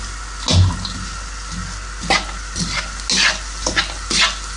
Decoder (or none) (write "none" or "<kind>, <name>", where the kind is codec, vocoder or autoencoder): none